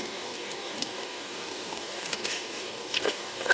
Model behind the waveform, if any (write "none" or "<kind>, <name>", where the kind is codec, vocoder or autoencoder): codec, DAC